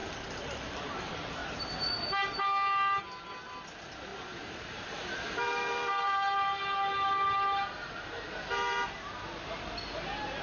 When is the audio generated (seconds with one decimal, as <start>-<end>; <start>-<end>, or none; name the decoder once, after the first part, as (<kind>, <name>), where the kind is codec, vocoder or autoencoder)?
0.0-1.0 (vocoder, BigVGAN v2); 1.4-3.0; 4.1-9.1